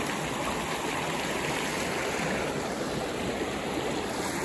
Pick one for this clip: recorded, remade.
recorded